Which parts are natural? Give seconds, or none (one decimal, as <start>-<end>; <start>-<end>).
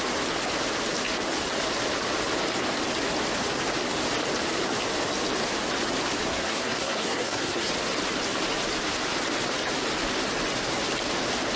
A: 0.0-6.2; 7.7-11.6